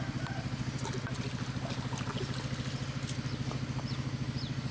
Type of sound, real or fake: real